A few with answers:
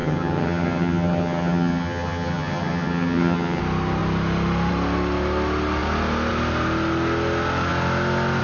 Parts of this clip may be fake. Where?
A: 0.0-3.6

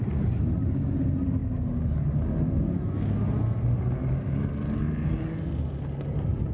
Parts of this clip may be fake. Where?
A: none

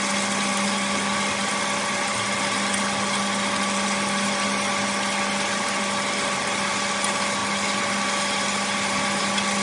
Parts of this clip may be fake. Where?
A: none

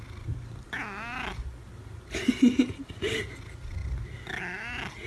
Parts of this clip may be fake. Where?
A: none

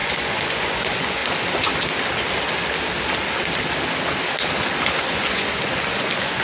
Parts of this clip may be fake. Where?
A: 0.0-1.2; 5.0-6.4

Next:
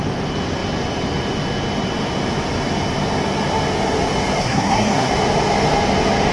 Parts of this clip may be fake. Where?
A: 4.4-5.1

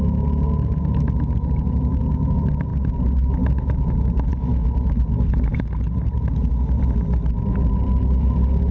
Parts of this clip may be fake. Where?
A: none

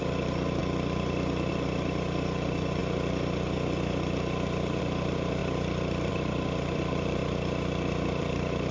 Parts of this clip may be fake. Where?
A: 0.0-0.6; 1.5-2.8; 4.8-5.4; 6.1-7.2; 8.2-8.7